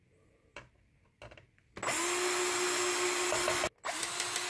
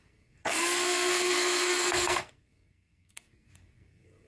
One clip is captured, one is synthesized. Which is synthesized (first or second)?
second